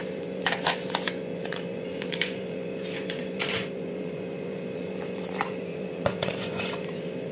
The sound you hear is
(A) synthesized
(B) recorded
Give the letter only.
A